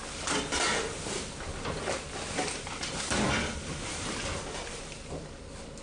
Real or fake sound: fake